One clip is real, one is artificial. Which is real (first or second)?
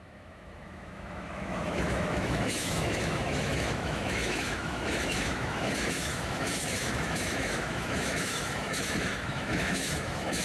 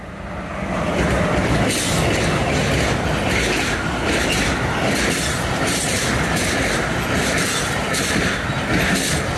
second